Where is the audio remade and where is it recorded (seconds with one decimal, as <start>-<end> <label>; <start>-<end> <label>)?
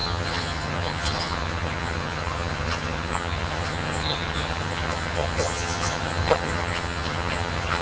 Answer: 0.0-7.8 remade